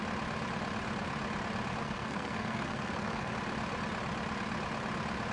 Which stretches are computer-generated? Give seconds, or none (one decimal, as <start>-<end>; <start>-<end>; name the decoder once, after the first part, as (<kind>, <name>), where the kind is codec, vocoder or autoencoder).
1.8-3.3 (codec, SNAC)